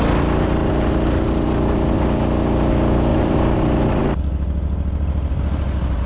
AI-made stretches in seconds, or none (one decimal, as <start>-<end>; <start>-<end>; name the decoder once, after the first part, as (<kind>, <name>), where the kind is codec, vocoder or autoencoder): 3.1-3.6 (vocoder, BigVGAN v2)